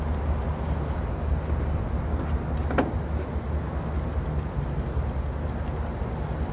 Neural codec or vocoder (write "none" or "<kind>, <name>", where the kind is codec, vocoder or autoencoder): none